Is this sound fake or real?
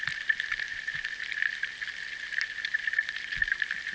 real